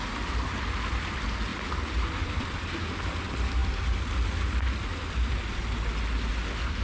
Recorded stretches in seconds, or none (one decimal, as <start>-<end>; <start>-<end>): 0.0-6.8